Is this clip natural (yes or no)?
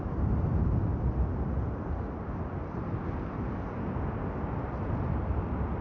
yes